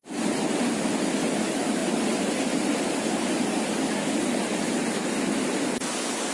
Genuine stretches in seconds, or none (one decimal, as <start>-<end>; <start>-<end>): 0.0-6.3